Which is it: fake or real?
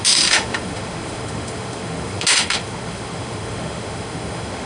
fake